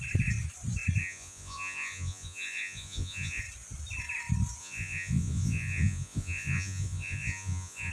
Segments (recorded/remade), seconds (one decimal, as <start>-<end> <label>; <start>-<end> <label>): 0.0-1.0 recorded; 1.0-3.4 remade; 3.4-4.6 recorded; 4.6-7.9 remade